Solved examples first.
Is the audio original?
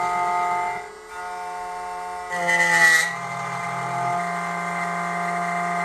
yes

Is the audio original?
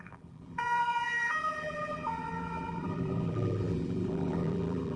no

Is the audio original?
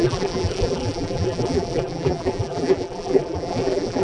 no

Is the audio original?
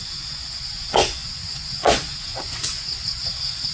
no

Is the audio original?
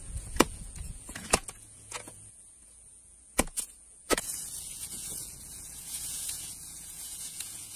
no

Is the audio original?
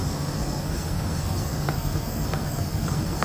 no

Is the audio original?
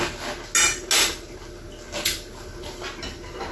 yes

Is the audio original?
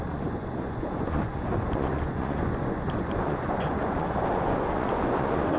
no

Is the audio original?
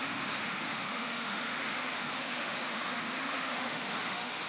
no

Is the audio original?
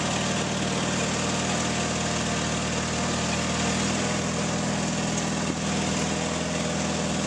yes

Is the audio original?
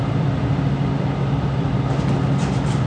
yes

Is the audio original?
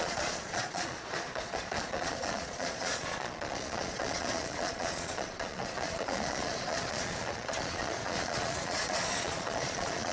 no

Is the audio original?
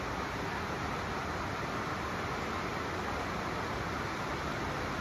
yes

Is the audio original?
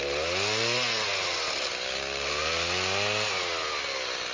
yes